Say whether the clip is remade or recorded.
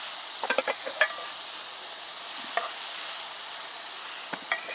recorded